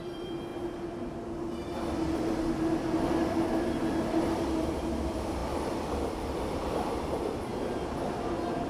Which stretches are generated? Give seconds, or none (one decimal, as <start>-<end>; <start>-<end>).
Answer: 0.0-0.5; 4.1-7.5